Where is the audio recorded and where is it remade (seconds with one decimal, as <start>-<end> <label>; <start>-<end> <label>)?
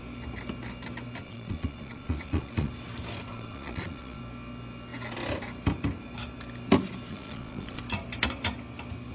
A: 0.0-1.2 recorded; 1.2-2.7 remade; 2.7-3.3 recorded; 3.3-4.2 remade; 4.2-7.1 recorded; 7.1-7.8 remade; 7.8-9.1 recorded